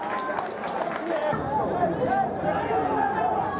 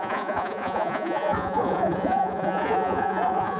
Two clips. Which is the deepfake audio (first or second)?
second